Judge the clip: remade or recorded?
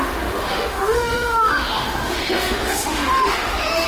remade